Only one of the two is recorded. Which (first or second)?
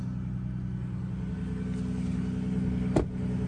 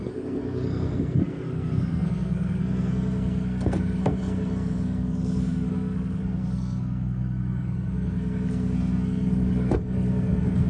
first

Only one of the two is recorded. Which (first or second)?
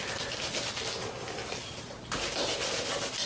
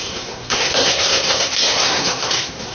first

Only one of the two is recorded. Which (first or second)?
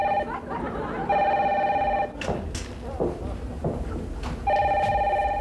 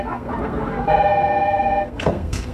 first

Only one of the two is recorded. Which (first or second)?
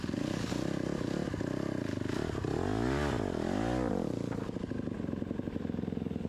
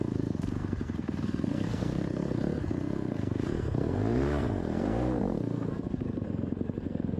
first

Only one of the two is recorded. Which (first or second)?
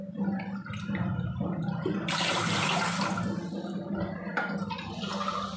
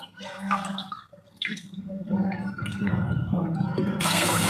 first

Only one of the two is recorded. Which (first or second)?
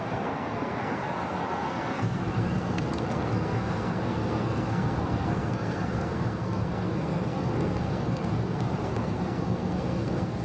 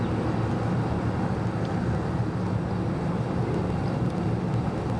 second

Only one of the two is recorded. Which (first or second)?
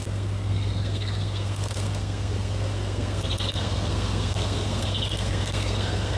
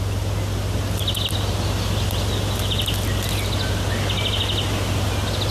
second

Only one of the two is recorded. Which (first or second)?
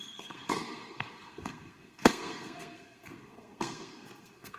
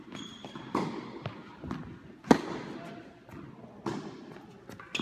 second